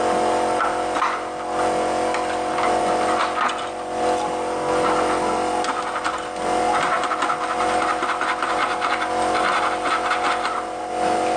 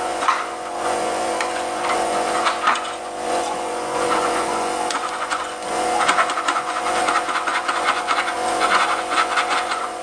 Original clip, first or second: first